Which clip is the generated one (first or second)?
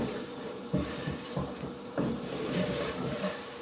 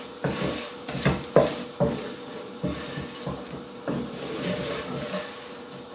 first